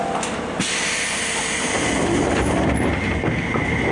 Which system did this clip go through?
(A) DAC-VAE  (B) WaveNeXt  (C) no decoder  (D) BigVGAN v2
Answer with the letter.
C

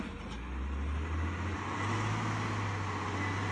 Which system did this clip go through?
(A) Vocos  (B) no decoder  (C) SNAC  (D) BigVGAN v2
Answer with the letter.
B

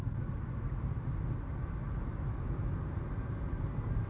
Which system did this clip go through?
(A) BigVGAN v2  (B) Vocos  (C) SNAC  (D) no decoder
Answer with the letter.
D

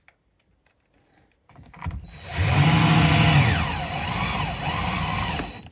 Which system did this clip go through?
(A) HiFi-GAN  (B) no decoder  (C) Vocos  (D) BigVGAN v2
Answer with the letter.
B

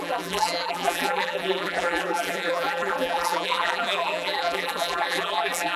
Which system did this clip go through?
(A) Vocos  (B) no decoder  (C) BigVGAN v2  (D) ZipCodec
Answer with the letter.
C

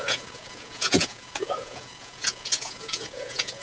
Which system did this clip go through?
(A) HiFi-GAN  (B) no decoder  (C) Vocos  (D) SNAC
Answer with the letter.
C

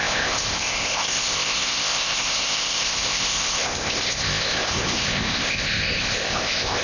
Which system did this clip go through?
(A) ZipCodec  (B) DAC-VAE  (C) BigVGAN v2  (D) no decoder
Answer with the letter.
A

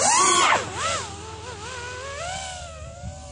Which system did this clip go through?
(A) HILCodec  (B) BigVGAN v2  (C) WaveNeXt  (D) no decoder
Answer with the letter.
D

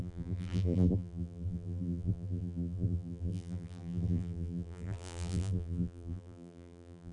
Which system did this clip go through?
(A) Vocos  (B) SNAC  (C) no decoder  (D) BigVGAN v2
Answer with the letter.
D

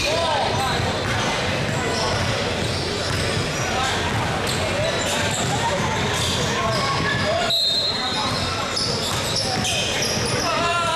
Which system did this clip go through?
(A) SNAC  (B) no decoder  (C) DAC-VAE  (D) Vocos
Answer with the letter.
B